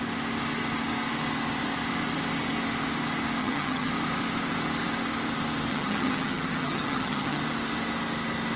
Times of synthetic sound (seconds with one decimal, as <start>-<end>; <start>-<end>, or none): 3.4-3.9; 5.7-7.4